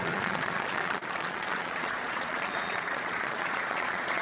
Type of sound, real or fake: fake